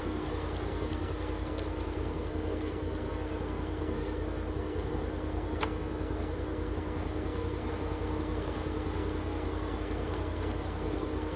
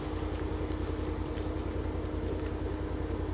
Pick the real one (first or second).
second